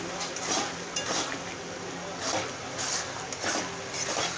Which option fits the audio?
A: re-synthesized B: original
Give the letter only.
B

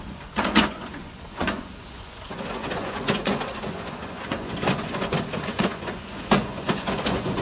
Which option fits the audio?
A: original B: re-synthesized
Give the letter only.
B